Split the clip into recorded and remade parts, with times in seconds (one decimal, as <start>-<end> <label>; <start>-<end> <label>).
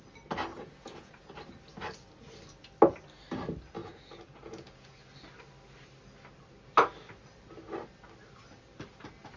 0.0-0.5 recorded; 0.5-1.2 remade; 1.2-3.8 recorded; 3.8-5.0 remade; 5.0-9.4 recorded